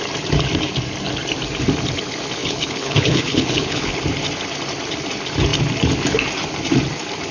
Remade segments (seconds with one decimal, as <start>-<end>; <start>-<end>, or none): 2.4-4.0